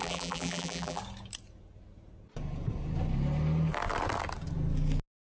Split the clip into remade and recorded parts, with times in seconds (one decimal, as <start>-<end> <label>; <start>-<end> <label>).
0.0-1.0 remade; 1.0-5.3 recorded